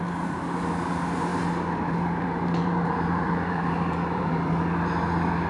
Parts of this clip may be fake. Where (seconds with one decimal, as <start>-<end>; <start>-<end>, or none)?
1.3-4.6